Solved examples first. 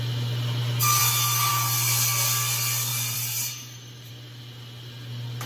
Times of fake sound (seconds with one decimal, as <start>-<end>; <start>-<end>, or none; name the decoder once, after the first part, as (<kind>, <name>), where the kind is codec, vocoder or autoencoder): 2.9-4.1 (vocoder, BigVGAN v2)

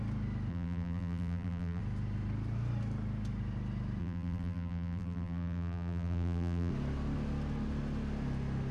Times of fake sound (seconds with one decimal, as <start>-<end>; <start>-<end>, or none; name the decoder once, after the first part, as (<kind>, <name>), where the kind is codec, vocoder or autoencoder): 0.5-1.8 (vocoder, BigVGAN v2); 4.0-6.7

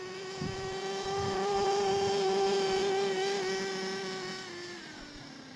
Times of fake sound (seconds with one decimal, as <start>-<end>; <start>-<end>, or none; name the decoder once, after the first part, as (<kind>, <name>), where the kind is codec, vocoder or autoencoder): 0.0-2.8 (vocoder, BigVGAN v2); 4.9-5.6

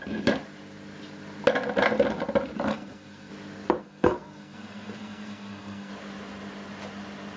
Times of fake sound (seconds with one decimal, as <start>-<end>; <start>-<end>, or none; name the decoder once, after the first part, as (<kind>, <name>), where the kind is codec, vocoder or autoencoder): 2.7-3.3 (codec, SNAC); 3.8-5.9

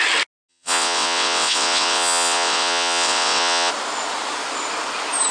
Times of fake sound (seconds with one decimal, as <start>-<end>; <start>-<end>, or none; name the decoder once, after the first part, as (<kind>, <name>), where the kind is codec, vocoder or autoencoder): 0.5-3.7 (vocoder, WaveNeXt)

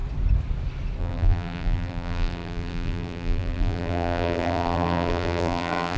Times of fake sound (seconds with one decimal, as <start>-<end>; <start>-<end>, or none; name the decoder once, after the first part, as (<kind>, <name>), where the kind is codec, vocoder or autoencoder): 1.0-6.0 (vocoder, BigVGAN v2)

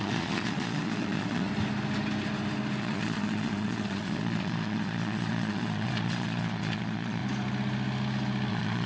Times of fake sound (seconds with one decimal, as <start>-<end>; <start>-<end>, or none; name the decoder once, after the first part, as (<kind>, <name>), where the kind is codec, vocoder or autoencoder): 0.0-1.5 (vocoder, Vocos); 2.8-7.2; 8.5-8.9

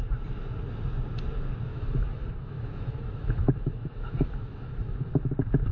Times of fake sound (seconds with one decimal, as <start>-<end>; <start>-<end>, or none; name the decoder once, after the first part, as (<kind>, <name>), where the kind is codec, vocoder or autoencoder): 1.7-5.1 (autoencoder, DAC-VAE)